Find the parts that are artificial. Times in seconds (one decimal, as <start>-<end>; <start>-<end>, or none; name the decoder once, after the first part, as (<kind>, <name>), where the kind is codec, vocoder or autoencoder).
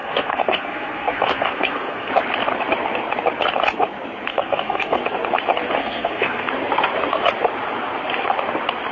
0.0-2.1 (codec, SNAC); 4.3-5.0; 5.8-6.5